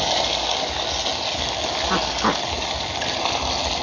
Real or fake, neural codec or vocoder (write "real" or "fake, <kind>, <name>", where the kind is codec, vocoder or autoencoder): real